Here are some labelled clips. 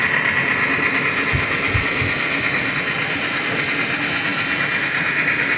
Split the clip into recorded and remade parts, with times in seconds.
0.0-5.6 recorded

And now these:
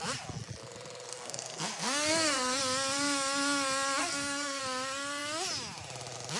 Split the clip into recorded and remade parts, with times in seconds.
0.0-1.1 recorded; 1.1-2.6 remade; 2.6-4.0 recorded; 4.0-4.6 remade; 4.6-6.4 recorded

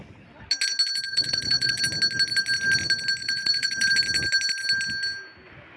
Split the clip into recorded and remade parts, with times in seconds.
0.0-1.1 recorded; 1.1-1.8 remade; 1.8-3.2 recorded; 3.2-3.9 remade; 3.9-5.8 recorded

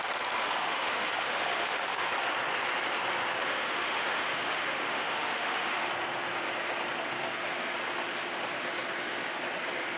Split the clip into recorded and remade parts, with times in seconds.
0.0-0.4 recorded; 0.4-2.1 remade; 2.1-3.5 recorded; 3.5-5.9 remade; 5.9-10.0 recorded

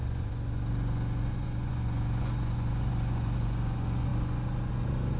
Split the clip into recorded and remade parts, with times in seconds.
0.0-5.2 remade